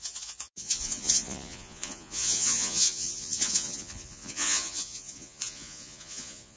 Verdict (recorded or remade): remade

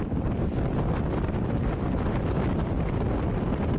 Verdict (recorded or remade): recorded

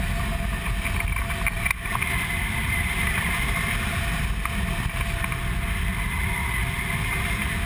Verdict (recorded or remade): recorded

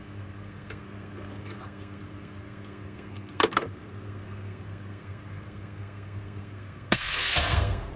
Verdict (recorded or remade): remade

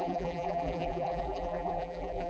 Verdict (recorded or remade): remade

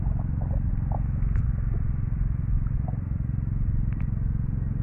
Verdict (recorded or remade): remade